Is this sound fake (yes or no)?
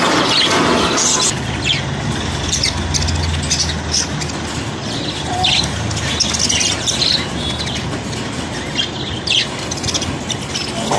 no